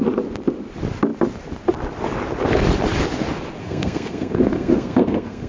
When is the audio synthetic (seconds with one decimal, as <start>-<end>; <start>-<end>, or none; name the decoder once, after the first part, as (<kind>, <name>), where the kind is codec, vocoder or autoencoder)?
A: 3.6-5.5 (codec, SNAC)